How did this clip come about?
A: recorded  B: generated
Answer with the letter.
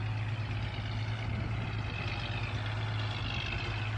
A